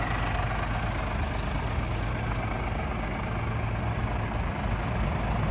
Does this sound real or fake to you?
real